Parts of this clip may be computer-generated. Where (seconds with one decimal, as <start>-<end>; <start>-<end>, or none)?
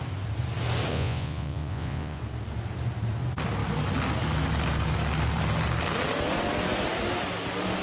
0.9-2.2